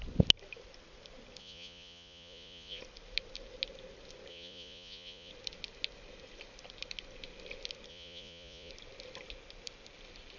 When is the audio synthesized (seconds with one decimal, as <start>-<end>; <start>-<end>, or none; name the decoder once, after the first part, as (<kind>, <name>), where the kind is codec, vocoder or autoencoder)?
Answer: 1.4-2.8 (vocoder, Vocos); 4.3-5.3; 7.9-8.7